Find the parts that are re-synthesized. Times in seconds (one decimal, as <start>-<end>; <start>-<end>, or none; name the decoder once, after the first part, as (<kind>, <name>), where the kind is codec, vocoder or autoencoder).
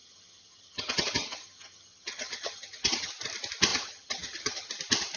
0.0-3.1 (vocoder, HiFi-GAN); 3.7-4.7